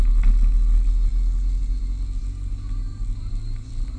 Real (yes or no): yes